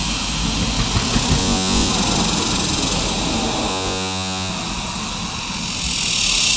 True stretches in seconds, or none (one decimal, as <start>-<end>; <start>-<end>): 0.0-1.4; 1.9-3.7; 4.5-6.6